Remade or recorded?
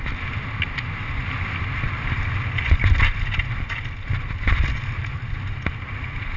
recorded